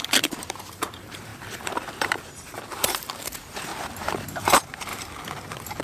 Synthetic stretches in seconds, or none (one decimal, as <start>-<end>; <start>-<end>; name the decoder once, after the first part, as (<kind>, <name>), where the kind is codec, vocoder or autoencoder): 0.0-3.7 (vocoder, BigVGAN v2); 4.5-4.9